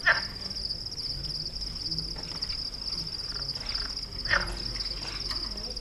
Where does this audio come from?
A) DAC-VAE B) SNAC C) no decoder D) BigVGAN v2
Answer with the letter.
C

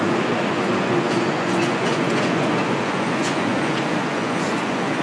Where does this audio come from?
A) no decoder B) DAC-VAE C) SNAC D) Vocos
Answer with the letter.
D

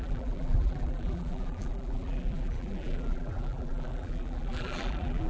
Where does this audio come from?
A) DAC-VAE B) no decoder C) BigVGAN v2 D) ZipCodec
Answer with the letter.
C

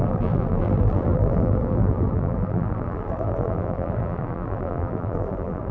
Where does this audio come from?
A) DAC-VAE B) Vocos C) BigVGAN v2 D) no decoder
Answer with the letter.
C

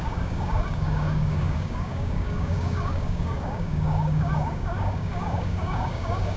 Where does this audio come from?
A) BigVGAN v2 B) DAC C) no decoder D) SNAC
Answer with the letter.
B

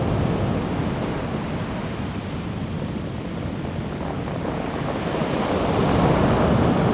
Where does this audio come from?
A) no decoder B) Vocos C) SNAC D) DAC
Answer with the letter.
A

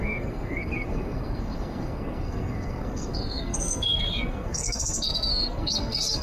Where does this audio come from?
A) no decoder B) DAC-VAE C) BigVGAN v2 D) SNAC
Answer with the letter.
D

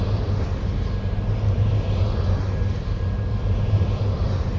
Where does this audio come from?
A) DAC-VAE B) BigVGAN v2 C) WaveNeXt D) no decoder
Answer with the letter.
D